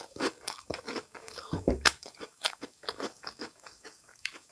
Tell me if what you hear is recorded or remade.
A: remade